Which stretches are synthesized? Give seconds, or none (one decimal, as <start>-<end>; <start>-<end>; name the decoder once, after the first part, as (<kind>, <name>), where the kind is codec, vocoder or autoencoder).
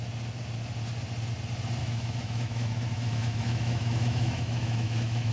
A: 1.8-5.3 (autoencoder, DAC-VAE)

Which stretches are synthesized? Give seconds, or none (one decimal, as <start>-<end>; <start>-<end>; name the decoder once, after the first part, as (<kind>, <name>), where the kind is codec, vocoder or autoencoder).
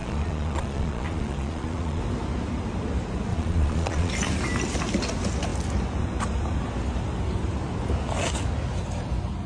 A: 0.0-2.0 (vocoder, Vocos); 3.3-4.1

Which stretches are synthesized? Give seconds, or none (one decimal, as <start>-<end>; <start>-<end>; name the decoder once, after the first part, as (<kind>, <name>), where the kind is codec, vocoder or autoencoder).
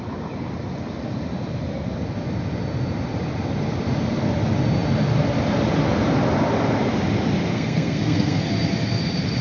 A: 7.5-8.4 (codec, SNAC)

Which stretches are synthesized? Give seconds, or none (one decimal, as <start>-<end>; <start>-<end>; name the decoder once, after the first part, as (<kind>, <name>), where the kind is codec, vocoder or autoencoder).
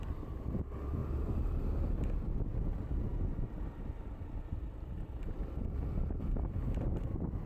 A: none